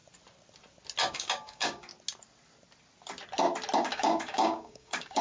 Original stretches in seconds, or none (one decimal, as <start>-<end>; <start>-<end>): 0.0-1.1; 1.9-3.8